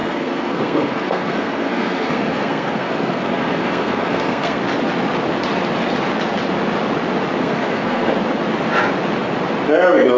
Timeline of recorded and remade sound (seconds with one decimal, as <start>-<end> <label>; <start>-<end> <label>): 0.0-4.6 remade; 4.6-7.4 recorded; 7.4-8.1 remade; 8.1-10.2 recorded